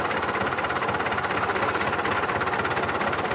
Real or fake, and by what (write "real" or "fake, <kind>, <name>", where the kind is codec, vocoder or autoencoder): real